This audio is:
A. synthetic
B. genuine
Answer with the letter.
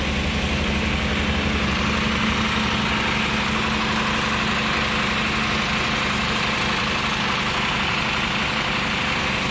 B